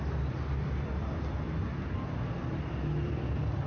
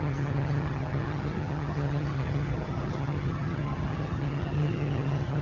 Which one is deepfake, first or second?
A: second